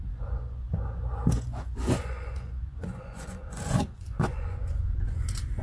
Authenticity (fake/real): fake